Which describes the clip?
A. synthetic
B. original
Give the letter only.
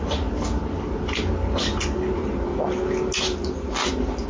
B